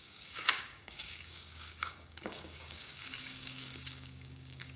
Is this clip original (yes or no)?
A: no